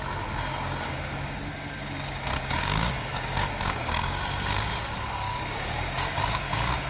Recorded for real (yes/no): no